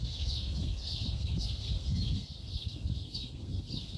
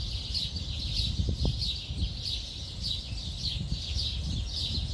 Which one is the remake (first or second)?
first